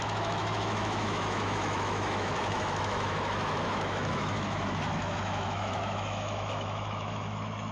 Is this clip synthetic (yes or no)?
yes